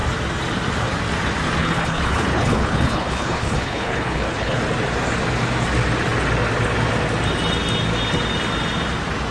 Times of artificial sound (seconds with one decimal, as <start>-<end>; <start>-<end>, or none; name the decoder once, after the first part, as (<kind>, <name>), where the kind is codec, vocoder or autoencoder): 1.6-4.6 (codec, HILCodec)